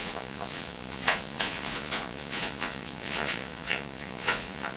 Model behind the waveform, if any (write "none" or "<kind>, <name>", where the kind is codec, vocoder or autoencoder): vocoder, Vocos